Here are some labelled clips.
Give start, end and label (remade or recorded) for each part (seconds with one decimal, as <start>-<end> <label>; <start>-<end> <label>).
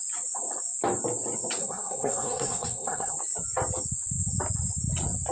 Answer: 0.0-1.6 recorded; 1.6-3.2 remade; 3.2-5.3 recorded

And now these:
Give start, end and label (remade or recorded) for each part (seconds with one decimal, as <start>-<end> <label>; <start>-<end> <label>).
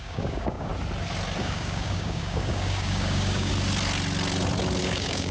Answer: 0.0-0.7 remade; 0.7-1.4 recorded; 1.4-3.5 remade; 3.5-4.8 recorded; 4.8-5.3 remade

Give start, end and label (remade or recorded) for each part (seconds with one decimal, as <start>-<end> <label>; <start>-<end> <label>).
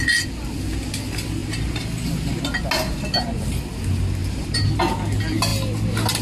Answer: 0.0-1.4 recorded; 1.4-2.4 remade; 2.4-4.2 recorded; 4.2-4.9 remade; 4.9-6.2 recorded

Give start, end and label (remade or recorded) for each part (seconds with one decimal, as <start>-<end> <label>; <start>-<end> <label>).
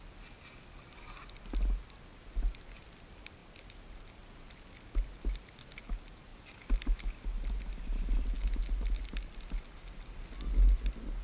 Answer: 0.0-3.4 recorded; 3.4-4.6 remade; 4.6-11.2 recorded